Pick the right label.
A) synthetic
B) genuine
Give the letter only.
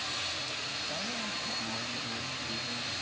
B